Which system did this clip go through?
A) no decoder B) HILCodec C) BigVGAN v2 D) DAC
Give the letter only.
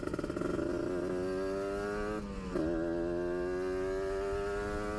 A